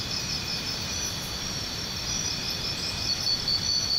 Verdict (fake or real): real